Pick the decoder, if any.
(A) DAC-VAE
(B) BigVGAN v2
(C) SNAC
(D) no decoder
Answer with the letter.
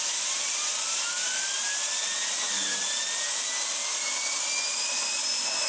D